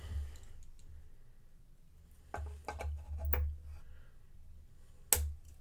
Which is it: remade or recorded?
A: recorded